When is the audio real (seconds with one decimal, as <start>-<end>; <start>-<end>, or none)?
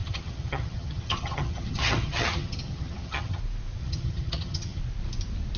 3.4-3.8; 4.8-5.6